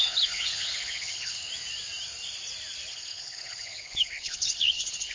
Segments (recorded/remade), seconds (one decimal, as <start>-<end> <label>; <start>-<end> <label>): 0.0-1.5 remade; 1.5-2.9 recorded; 2.9-5.1 remade